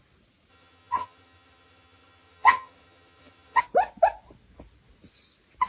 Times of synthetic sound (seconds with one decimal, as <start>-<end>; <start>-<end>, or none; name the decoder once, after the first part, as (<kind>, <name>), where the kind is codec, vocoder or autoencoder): 0.5-3.6 (vocoder, HiFi-GAN)